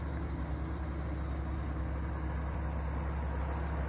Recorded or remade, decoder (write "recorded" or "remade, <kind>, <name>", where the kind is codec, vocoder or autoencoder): recorded